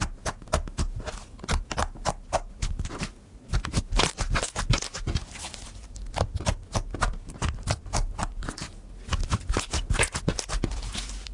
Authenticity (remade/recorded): recorded